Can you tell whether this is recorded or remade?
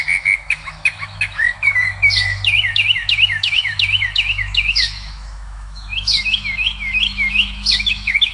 remade